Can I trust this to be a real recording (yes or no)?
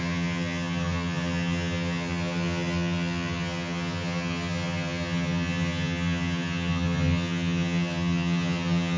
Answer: no